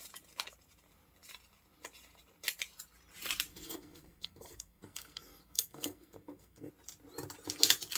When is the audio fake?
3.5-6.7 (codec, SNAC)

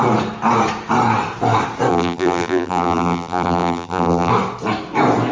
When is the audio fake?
1.9-4.3 (vocoder, BigVGAN v2)

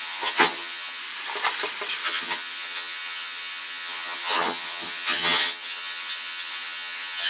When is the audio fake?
0.0-1.0 (vocoder, HiFi-GAN); 2.0-7.3

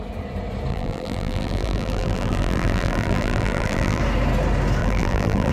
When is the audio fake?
0.7-4.0 (vocoder, BigVGAN v2); 4.8-5.5

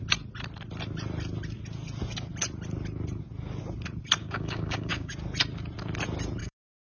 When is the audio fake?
4.2-5.1 (codec, DAC); 6.4-7.0

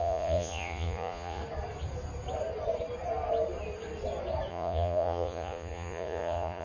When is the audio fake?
0.0-1.4 (vocoder, Vocos); 4.5-6.6